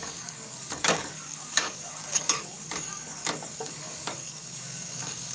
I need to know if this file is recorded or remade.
remade